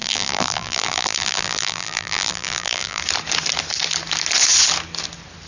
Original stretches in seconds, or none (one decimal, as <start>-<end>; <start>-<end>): 3.0-5.5